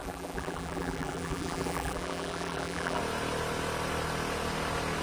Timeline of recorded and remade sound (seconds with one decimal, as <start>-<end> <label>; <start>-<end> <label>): 0.0-3.0 remade; 3.0-5.0 recorded